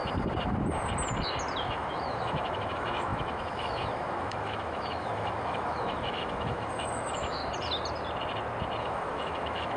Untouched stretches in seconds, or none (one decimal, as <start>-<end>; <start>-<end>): 0.0-1.6; 7.4-8.8